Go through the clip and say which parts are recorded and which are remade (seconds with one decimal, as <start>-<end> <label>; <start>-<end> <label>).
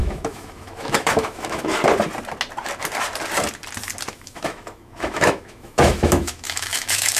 0.0-1.8 remade; 1.8-4.1 recorded; 4.1-7.2 remade